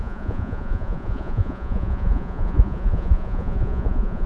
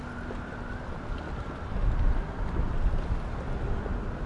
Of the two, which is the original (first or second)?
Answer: second